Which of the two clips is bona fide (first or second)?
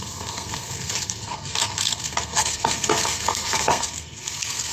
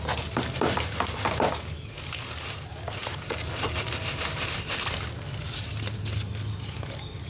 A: second